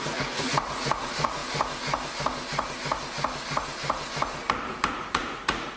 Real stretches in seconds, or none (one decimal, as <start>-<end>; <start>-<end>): 1.4-4.9